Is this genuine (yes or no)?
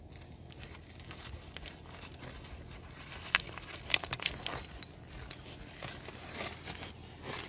yes